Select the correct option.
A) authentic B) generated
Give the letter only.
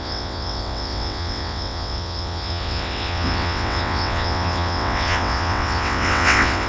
B